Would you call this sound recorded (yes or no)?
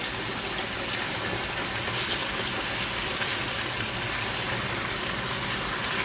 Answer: yes